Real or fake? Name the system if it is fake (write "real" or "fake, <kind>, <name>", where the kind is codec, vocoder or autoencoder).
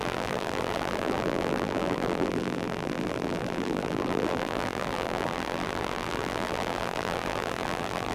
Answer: fake, vocoder, BigVGAN v2